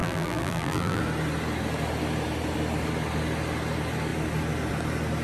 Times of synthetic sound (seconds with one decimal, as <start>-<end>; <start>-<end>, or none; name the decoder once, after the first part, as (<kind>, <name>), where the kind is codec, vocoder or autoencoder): 0.0-1.0 (vocoder, BigVGAN v2)

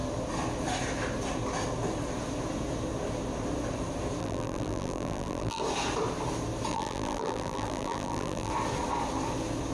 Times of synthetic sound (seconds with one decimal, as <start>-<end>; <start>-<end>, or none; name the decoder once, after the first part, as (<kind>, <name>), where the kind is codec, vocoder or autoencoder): 4.2-5.6 (vocoder, BigVGAN v2); 6.7-8.5

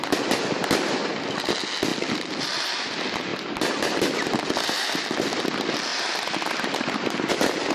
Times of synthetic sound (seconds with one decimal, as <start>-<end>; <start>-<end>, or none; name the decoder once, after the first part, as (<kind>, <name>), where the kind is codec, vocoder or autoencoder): 1.9-2.9 (vocoder, BigVGAN v2); 3.3-4.4; 5.9-7.3